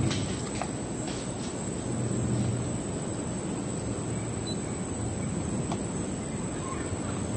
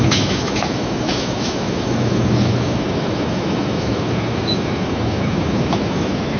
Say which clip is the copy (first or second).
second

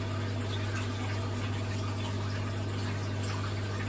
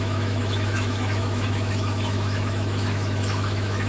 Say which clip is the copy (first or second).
second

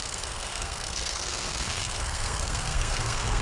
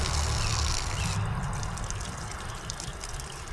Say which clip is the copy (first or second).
first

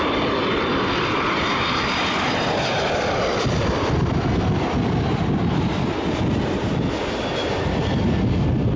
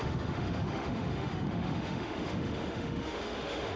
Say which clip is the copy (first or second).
second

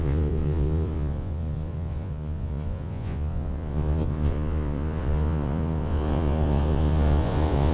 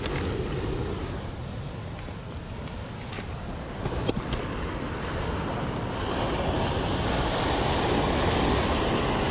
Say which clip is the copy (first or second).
first